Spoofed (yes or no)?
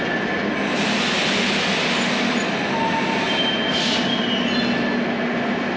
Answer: no